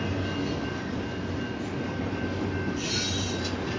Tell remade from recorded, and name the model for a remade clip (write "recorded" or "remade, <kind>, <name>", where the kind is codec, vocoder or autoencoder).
recorded